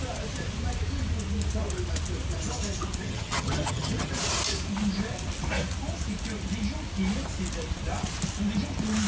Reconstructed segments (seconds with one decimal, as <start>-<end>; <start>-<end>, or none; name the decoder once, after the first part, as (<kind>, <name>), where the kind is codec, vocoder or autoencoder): 3.0-4.1 (vocoder, HiFi-GAN)